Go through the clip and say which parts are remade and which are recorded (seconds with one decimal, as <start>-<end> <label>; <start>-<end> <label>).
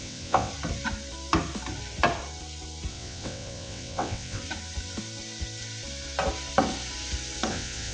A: 0.0-0.5 remade; 0.5-2.9 recorded; 2.9-4.4 remade; 4.4-7.5 recorded; 7.5-7.9 remade